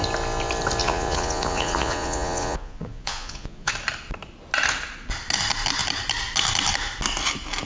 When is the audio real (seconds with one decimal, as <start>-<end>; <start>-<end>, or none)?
0.0-0.8; 3.7-7.7